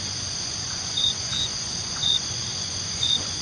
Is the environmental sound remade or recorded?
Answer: remade